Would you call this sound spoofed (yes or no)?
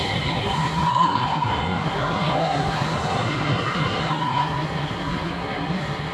yes